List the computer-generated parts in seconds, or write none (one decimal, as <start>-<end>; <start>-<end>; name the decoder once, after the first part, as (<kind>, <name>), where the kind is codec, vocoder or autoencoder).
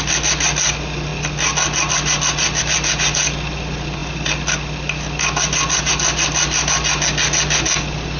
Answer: none